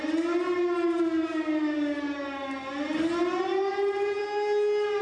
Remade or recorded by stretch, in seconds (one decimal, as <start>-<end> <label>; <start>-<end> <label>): 0.0-5.0 recorded